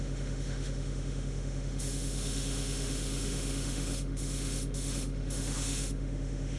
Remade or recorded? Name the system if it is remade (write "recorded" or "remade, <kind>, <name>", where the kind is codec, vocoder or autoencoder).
remade, autoencoder, DAC-VAE